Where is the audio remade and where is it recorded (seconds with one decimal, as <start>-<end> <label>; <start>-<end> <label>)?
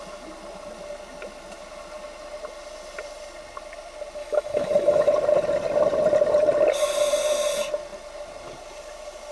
0.0-4.2 recorded; 4.2-5.1 remade; 5.1-9.3 recorded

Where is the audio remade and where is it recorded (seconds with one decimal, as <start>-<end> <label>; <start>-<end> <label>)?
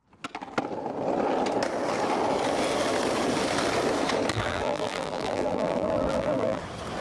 0.0-4.3 recorded; 4.3-6.6 remade; 6.6-7.0 recorded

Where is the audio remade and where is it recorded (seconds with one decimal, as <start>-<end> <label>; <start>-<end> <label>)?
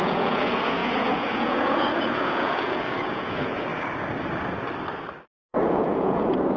0.0-3.7 remade; 3.7-5.5 recorded; 5.5-6.6 remade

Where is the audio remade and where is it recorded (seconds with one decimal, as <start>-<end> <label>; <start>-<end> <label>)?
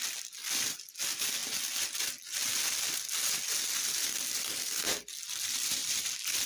0.0-0.4 recorded; 0.4-0.9 remade; 0.9-2.5 recorded; 2.5-5.0 remade; 5.0-5.8 recorded; 5.8-6.5 remade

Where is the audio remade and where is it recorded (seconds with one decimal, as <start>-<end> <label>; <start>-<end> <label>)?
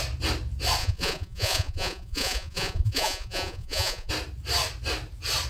0.0-0.8 recorded; 0.8-4.1 remade; 4.1-5.5 recorded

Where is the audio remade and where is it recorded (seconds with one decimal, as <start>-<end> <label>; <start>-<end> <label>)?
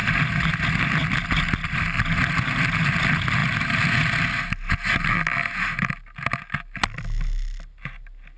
0.0-8.4 recorded